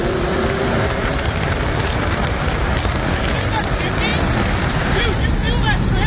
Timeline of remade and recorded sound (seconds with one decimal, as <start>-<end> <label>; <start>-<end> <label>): 0.0-6.1 recorded